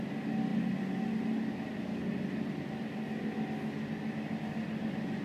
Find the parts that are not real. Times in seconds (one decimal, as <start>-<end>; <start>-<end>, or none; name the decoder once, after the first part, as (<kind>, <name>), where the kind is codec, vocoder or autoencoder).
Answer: 0.5-1.0 (vocoder, BigVGAN v2)